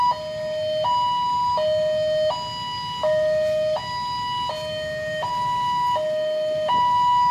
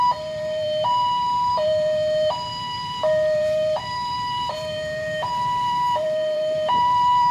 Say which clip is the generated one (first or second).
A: second